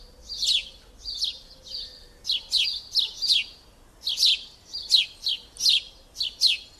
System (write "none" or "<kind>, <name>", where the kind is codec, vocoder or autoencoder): none